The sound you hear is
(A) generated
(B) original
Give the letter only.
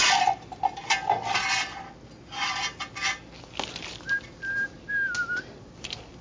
B